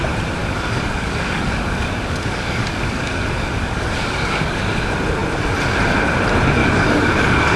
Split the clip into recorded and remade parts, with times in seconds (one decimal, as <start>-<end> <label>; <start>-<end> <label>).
0.0-0.4 recorded; 0.4-4.6 remade; 4.6-6.6 recorded; 6.6-7.6 remade